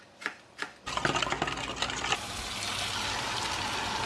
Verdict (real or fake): real